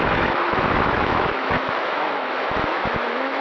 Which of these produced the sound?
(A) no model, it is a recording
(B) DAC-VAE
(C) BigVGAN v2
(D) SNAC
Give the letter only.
B